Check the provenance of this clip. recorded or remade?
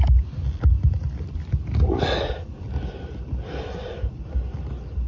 recorded